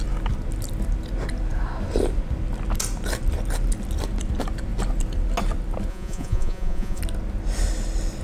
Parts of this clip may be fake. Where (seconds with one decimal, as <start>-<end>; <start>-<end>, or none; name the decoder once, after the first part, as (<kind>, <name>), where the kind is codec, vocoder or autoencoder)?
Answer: 5.9-7.0 (vocoder, Vocos)